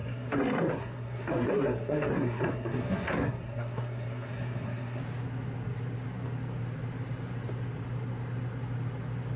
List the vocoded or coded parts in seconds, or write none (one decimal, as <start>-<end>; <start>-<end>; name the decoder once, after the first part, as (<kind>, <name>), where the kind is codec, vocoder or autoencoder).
0.0-5.0 (codec, SNAC)